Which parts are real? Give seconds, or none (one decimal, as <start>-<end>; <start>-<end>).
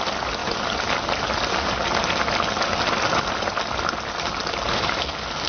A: 0.0-5.5